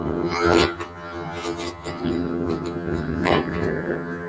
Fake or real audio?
fake